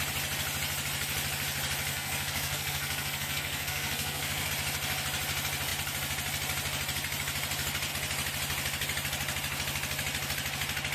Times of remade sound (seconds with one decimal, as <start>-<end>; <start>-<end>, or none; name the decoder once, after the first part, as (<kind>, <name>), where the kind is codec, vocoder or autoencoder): 1.9-4.5 (codec, SNAC)